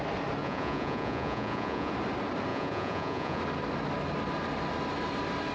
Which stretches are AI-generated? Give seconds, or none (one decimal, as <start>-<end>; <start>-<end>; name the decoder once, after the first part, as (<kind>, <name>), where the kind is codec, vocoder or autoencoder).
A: 0.4-1.9 (vocoder, Vocos); 2.5-3.4